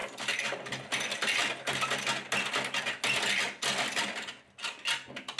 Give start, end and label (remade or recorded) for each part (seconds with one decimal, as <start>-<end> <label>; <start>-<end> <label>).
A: 0.0-5.4 recorded